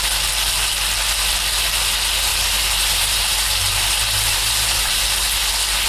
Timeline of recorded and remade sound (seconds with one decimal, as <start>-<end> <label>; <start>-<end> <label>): 0.0-2.3 recorded; 2.3-5.0 remade; 5.0-5.9 recorded